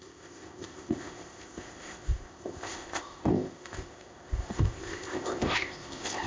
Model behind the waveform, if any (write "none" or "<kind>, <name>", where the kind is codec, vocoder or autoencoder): codec, ZipCodec